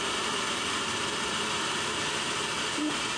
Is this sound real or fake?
fake